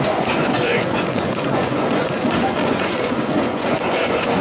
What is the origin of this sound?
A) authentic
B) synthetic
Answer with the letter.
B